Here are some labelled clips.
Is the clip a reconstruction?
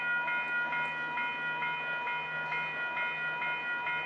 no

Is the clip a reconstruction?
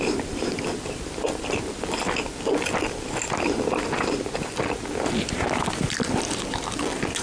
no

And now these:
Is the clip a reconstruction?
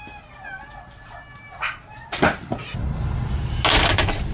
no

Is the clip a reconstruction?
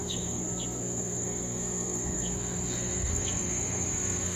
yes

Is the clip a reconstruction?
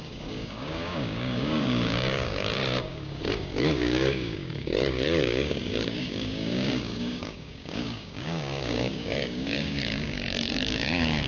yes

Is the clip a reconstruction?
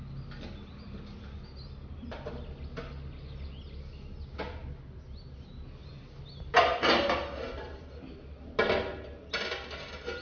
no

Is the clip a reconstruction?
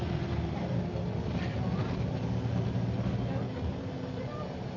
no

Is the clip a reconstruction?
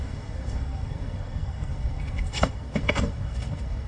yes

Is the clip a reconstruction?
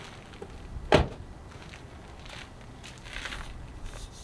no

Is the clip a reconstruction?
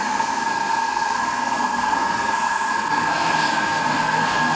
yes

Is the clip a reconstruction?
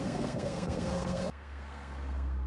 yes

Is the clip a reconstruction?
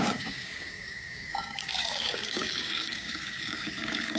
yes